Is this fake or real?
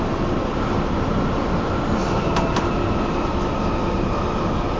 real